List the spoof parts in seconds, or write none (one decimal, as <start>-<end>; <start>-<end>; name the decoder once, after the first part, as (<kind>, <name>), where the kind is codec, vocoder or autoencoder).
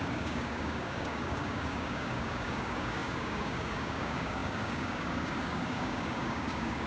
0.0-6.9 (codec, DAC)